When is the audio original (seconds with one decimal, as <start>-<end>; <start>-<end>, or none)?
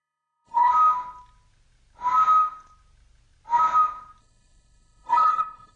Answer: 0.7-4.2